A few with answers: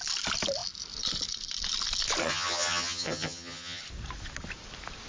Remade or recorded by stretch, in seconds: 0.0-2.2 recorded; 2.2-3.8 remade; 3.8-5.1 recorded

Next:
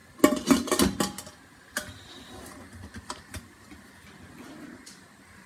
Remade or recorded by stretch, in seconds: 0.0-5.5 recorded